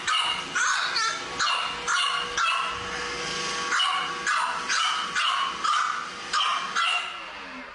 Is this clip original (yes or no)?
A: yes